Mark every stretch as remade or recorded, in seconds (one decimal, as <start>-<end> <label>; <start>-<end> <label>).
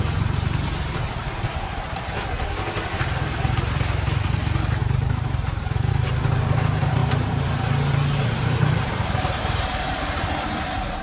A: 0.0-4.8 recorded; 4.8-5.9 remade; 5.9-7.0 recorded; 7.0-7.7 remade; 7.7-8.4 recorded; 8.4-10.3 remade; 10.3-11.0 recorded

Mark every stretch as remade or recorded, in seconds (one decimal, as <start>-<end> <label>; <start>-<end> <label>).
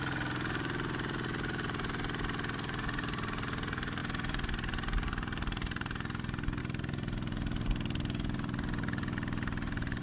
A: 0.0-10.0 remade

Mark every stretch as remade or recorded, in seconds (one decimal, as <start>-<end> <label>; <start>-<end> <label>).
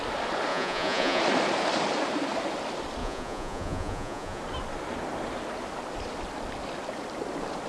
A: 0.0-0.5 recorded; 0.5-1.2 remade; 1.2-3.0 recorded; 3.0-4.4 remade; 4.4-7.7 recorded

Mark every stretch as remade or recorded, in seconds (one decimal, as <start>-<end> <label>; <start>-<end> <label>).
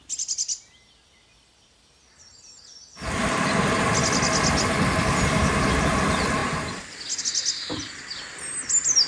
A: 0.0-9.1 recorded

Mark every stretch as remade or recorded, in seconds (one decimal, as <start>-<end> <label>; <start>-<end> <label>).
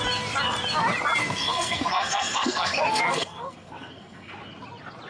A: 0.0-1.2 recorded; 1.2-4.3 remade; 4.3-5.1 recorded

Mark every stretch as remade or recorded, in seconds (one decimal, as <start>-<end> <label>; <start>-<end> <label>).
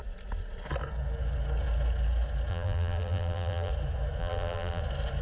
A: 0.0-2.5 recorded; 2.5-3.7 remade; 3.7-4.2 recorded; 4.2-4.8 remade; 4.8-5.2 recorded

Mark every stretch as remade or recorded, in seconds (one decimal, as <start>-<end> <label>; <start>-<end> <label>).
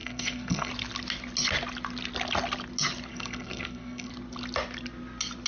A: 0.0-0.7 remade; 0.7-3.1 recorded; 3.1-4.1 remade; 4.1-5.5 recorded